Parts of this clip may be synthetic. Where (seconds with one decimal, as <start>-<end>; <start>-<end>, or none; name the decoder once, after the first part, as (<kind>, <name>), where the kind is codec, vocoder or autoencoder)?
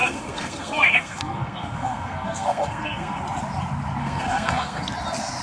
0.0-3.2 (codec, SNAC); 4.0-4.8